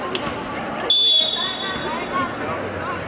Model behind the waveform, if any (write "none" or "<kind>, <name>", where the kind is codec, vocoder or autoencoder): none